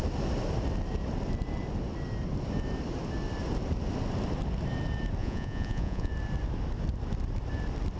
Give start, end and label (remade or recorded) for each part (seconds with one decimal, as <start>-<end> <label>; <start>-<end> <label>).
0.0-5.2 recorded; 5.2-6.1 remade; 6.1-8.0 recorded

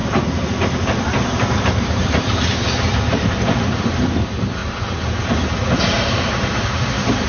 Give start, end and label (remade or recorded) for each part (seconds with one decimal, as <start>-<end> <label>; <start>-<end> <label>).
0.0-4.6 remade; 4.6-6.0 recorded; 6.0-7.3 remade

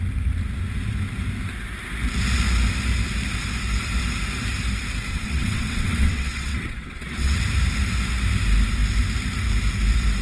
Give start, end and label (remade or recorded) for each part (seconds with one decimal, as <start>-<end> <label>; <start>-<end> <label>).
0.0-5.1 recorded; 5.1-7.4 remade; 7.4-10.2 recorded

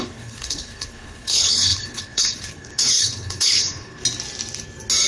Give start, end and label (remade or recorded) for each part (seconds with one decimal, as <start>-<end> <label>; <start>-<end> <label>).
0.0-4.0 remade; 4.0-5.1 recorded